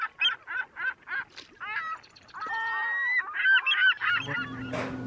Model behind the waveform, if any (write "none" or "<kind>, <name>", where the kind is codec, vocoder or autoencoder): none